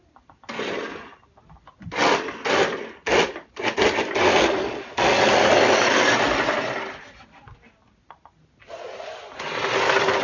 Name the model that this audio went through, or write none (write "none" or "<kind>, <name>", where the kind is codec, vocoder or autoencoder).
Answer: none